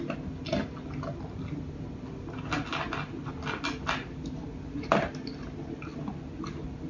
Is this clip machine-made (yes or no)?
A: no